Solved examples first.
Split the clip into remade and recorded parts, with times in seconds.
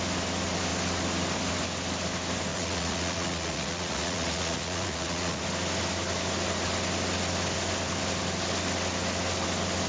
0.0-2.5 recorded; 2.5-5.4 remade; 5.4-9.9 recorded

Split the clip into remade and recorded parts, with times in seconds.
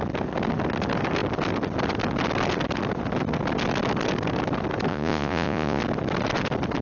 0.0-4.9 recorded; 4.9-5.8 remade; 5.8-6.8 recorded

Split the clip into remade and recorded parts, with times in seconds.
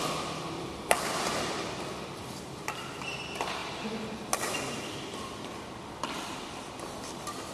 0.0-7.5 recorded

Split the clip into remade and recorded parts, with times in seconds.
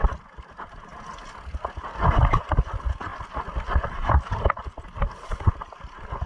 0.0-6.3 recorded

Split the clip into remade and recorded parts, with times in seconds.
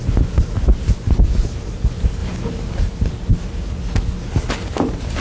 0.0-5.2 recorded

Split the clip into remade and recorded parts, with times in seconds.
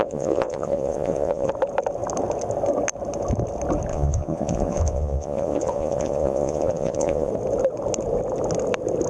0.0-1.5 remade; 1.5-3.9 recorded; 3.9-7.3 remade; 7.3-9.1 recorded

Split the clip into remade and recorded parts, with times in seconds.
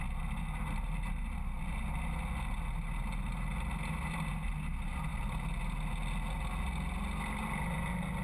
0.0-8.2 recorded